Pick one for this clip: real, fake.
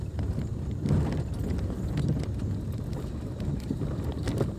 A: real